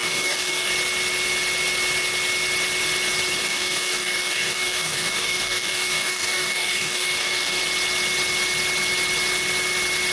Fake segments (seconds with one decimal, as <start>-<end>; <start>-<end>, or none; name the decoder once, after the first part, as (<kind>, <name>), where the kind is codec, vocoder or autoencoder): 0.0-0.7 (codec, DAC); 3.4-7.6